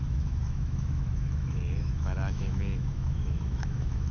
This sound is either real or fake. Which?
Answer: fake